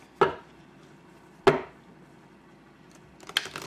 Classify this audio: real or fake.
real